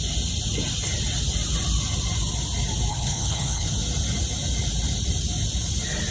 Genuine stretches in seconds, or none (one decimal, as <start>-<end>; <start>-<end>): 0.0-2.9; 3.7-6.1